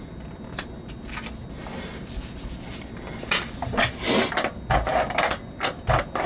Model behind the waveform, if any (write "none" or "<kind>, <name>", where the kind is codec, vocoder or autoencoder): none